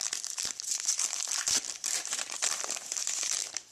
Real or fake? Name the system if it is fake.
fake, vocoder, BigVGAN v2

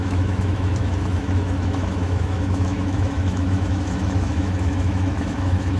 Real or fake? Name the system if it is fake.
fake, autoencoder, DAC-VAE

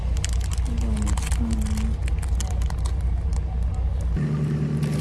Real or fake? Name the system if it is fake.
real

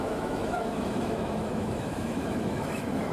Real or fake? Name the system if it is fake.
fake, autoencoder, DAC-VAE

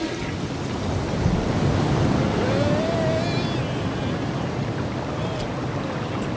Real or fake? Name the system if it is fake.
real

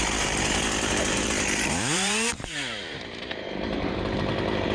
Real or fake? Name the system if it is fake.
fake, vocoder, BigVGAN v2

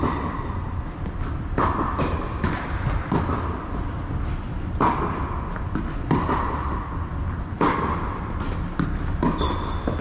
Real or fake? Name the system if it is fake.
real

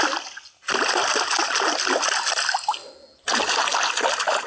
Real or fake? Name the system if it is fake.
real